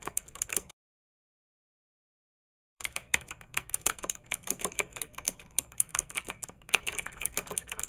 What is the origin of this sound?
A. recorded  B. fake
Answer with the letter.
B